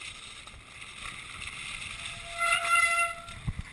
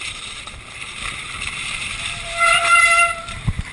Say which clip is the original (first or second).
first